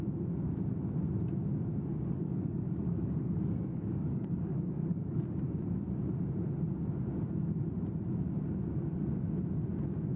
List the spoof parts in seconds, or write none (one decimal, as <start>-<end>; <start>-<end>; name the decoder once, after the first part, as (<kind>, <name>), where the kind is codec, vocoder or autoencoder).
1.9-5.2 (codec, DAC)